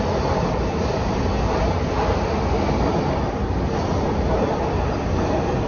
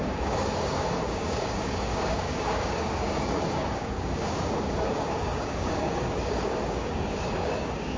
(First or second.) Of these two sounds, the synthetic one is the second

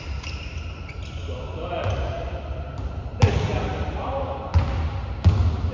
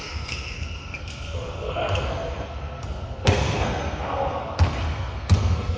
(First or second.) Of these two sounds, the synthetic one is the second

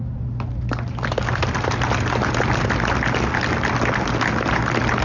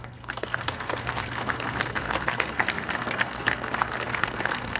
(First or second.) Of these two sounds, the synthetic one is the second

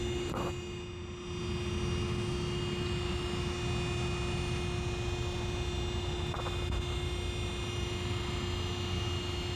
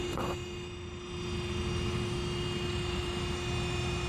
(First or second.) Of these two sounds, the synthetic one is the second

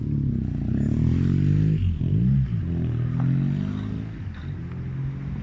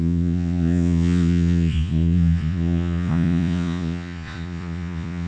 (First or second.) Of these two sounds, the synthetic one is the second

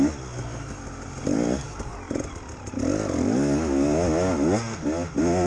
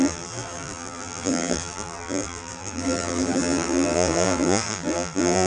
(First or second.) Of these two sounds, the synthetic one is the second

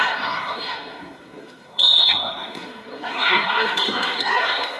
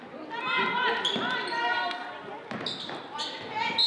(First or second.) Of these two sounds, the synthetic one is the first